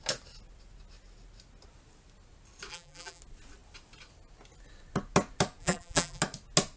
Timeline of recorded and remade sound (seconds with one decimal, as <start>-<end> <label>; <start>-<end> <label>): 0.0-2.7 recorded; 2.7-3.2 remade; 3.2-5.6 recorded; 5.6-6.2 remade; 6.2-6.8 recorded